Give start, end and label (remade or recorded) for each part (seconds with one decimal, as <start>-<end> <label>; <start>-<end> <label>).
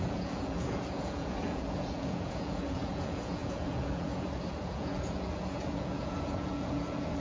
0.0-7.2 remade